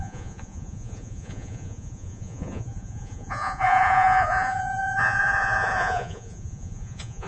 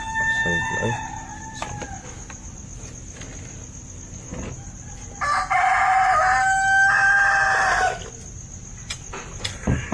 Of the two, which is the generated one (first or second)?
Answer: first